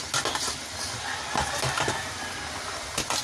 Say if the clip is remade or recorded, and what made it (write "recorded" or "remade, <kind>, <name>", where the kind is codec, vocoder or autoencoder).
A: recorded